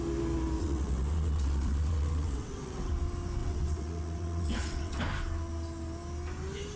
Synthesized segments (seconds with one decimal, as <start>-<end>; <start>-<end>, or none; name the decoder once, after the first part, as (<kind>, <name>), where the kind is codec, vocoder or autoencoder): 0.6-2.9 (vocoder, WaveNeXt); 3.4-5.0